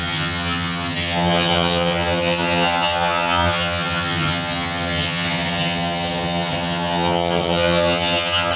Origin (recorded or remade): remade